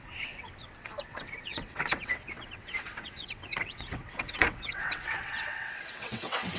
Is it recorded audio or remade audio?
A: remade